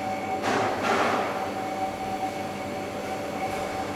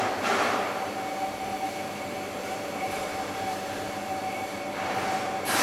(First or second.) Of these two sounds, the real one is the first